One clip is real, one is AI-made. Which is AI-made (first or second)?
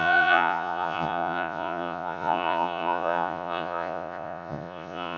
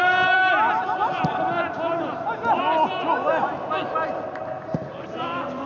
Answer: first